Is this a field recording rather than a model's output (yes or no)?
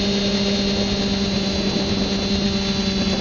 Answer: yes